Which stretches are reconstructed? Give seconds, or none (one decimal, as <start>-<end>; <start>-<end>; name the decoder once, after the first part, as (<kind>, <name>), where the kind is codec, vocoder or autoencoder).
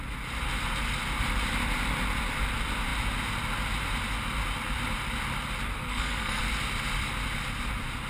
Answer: 5.8-6.4 (codec, SNAC)